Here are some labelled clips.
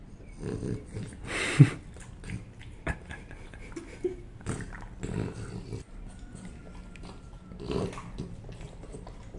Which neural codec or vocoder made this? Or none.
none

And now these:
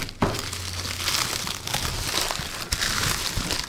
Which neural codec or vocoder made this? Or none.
none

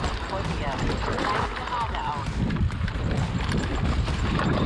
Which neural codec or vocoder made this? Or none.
none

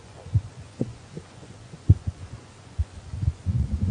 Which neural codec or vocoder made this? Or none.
vocoder, Vocos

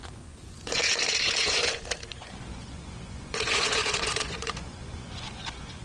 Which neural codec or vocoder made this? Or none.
vocoder, Vocos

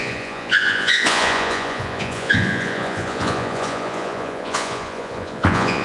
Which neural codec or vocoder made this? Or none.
vocoder, Vocos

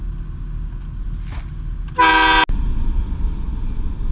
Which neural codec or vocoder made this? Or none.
none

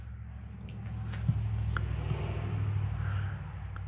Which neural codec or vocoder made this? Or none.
none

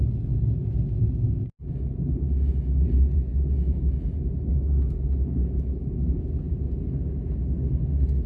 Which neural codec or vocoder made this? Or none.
none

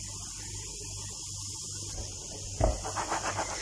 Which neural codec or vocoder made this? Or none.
none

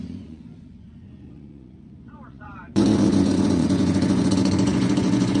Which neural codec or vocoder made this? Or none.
vocoder, Vocos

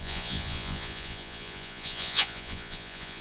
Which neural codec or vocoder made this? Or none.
vocoder, Vocos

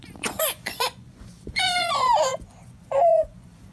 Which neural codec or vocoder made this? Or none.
vocoder, Vocos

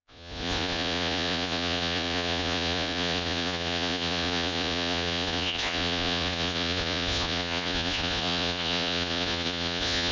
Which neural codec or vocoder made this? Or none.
vocoder, Vocos